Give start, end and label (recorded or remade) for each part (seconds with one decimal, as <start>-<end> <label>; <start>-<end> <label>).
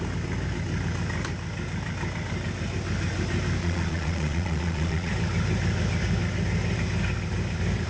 0.0-3.6 recorded; 3.6-5.1 remade; 5.1-7.9 recorded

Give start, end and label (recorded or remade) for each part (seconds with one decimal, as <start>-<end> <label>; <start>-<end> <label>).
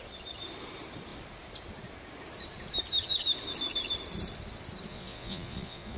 0.0-4.9 recorded; 4.9-6.0 remade